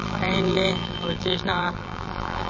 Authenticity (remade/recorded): remade